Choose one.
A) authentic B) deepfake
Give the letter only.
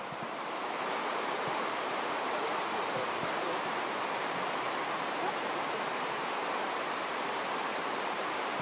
B